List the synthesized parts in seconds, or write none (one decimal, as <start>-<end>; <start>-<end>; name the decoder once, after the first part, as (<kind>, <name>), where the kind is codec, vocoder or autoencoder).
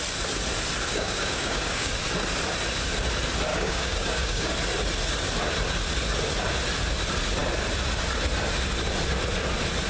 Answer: 0.9-1.9 (codec, DAC); 3.5-4.5